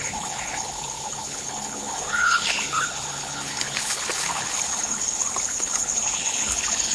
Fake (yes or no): yes